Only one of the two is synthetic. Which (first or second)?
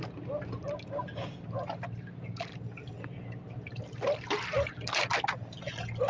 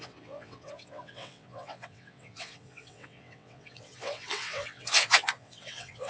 second